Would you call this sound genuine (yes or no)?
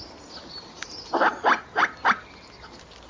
yes